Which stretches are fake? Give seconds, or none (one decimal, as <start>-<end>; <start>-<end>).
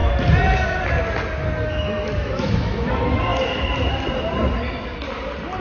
1.6-2.9